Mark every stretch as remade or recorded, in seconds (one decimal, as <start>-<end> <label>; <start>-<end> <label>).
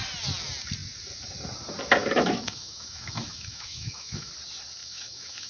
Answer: 0.0-2.0 recorded; 2.0-4.3 remade; 4.3-4.8 recorded; 4.8-5.5 remade